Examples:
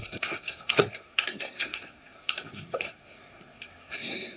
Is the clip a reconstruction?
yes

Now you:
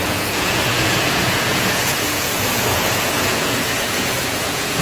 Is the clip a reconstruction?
yes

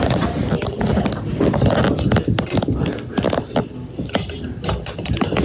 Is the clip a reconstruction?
no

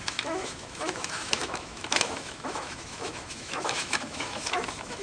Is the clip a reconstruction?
yes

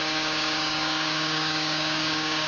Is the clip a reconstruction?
yes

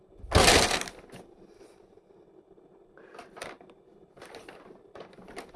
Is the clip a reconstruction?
no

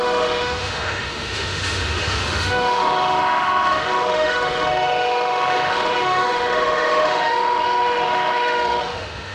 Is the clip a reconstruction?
yes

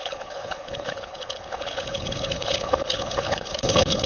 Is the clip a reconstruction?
yes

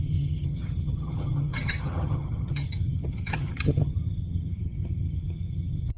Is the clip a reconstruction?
yes